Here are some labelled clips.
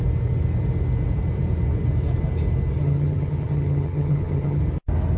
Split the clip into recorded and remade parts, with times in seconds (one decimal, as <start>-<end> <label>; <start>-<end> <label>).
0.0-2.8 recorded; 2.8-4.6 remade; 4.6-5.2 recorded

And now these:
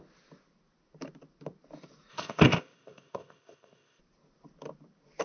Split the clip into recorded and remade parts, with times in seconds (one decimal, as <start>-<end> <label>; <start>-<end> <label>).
0.0-2.1 recorded; 2.1-4.0 remade; 4.0-5.2 recorded

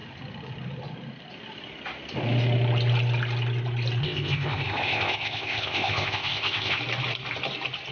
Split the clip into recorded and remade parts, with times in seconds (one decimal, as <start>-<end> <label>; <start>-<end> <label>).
0.0-4.0 recorded; 4.0-6.8 remade; 6.8-7.9 recorded

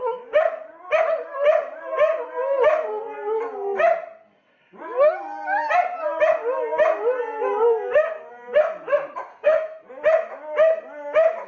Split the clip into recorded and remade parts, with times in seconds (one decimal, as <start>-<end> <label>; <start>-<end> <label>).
0.0-9.3 recorded; 9.3-9.9 remade; 9.9-11.5 recorded